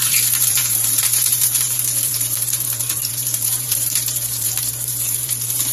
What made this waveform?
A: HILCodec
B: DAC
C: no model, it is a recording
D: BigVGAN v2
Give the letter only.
D